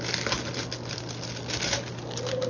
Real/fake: real